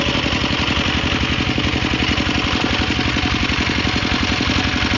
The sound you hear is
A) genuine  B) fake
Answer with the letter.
A